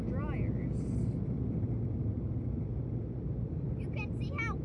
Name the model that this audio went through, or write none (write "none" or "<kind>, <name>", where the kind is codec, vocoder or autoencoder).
none